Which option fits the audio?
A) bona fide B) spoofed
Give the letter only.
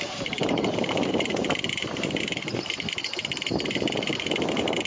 B